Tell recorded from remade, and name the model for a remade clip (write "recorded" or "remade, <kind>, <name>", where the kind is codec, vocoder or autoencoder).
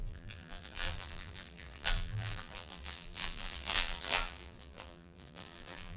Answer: remade, vocoder, BigVGAN v2